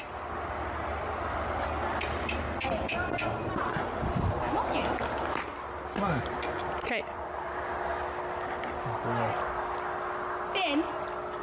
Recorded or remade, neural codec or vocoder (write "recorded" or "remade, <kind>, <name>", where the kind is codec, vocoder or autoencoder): recorded